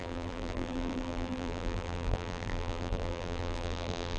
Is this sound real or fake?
fake